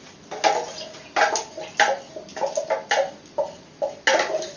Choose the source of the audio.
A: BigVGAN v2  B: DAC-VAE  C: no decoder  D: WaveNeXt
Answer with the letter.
C